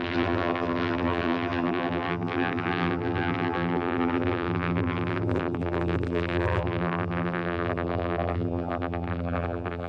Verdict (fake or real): fake